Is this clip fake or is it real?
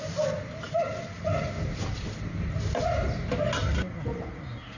real